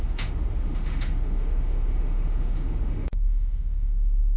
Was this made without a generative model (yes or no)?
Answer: no